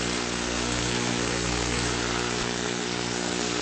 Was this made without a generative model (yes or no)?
no